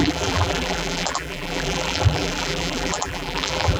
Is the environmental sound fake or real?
fake